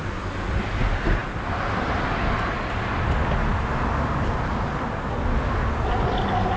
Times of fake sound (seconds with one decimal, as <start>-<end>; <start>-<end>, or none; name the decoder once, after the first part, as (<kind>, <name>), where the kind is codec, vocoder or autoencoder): none